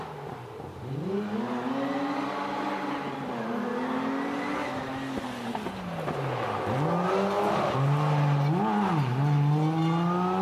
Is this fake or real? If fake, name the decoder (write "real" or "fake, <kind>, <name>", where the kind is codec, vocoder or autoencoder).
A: real